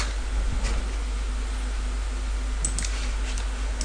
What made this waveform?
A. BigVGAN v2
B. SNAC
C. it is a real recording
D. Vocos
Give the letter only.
C